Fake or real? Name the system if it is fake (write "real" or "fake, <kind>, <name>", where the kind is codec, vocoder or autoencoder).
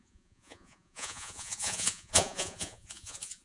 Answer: fake, vocoder, Vocos